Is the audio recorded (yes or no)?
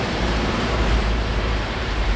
no